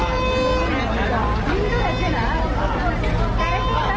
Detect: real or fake real